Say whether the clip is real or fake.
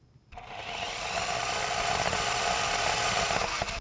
real